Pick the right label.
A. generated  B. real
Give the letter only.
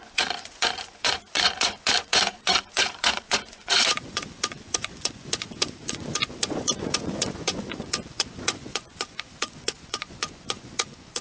A